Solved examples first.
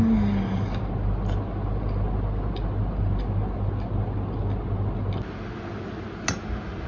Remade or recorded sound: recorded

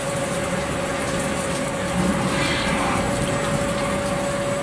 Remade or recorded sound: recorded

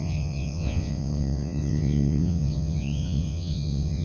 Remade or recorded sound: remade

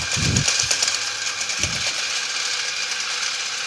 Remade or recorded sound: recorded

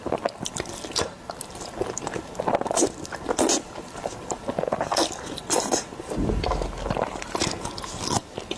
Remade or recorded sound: recorded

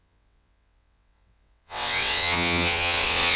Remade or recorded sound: remade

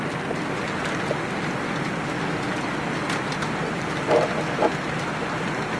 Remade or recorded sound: recorded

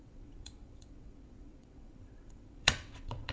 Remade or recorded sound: remade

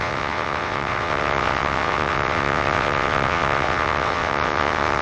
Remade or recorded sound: remade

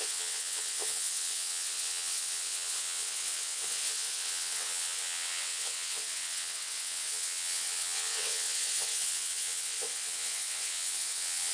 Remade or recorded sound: remade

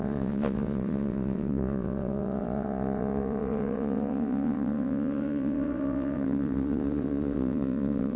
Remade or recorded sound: remade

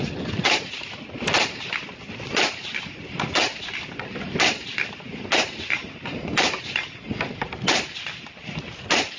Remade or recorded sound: recorded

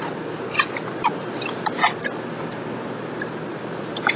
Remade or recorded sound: recorded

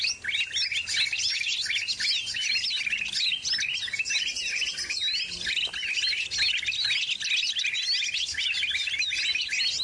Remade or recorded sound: recorded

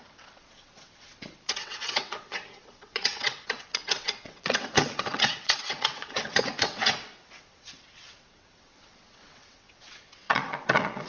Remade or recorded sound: remade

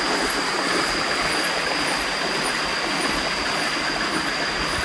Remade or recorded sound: recorded